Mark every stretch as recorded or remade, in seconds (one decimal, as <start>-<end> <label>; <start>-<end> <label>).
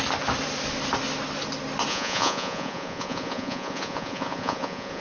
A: 0.0-1.9 recorded; 1.9-5.0 remade